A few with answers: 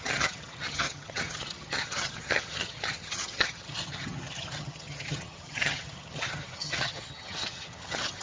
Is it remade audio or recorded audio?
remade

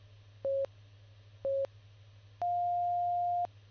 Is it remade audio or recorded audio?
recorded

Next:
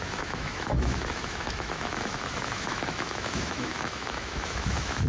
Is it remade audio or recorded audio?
remade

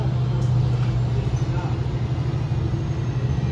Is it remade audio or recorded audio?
recorded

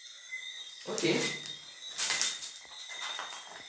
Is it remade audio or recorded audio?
recorded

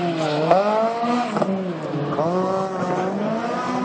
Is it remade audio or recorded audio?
recorded